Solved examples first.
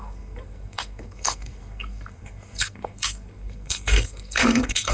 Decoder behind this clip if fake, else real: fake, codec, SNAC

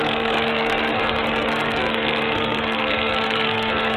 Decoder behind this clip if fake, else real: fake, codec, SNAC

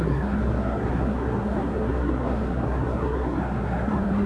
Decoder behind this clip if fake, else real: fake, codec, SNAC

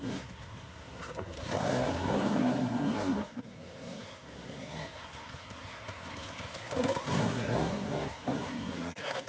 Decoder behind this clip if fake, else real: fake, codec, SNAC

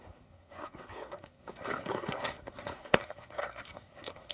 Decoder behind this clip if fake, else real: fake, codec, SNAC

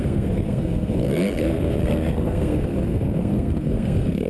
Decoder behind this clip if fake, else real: fake, codec, SNAC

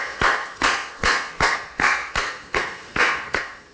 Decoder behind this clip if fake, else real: fake, codec, SNAC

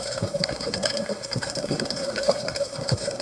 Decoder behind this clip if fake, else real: fake, codec, SNAC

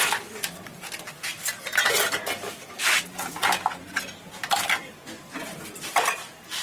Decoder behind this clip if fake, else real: real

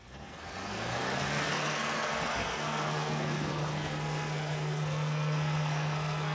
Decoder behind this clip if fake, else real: fake, codec, SNAC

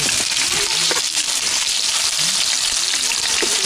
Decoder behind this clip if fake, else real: real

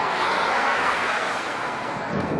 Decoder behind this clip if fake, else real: fake, codec, SNAC